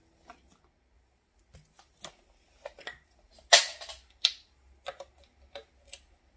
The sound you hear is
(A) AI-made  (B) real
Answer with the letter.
B